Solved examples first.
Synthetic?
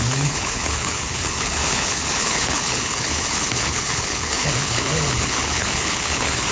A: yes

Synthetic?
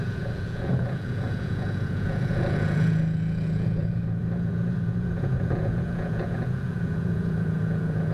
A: yes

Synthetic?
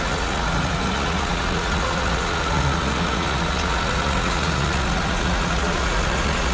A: yes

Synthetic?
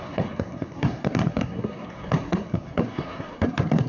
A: yes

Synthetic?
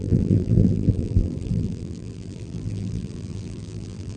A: yes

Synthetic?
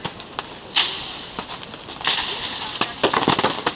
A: no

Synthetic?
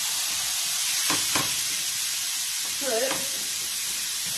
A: no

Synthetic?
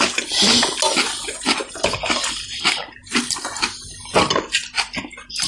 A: no